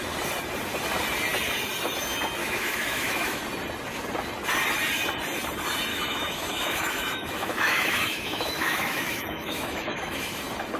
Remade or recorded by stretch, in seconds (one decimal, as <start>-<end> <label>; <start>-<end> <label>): 0.0-2.4 recorded; 2.4-3.4 remade; 3.4-5.9 recorded; 5.9-10.4 remade; 10.4-10.8 recorded